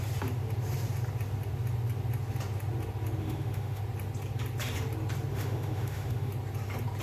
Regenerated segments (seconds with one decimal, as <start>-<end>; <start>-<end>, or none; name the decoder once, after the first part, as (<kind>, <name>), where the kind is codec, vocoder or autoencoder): 3.2-3.8 (autoencoder, DAC-VAE); 5.3-6.3